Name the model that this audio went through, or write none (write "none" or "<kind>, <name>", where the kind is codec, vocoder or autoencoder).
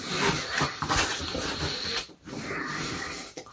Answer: none